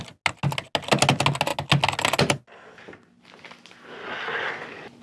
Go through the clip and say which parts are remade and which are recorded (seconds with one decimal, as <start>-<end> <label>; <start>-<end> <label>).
0.0-5.0 recorded